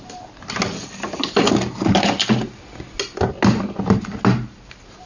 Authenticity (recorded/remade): recorded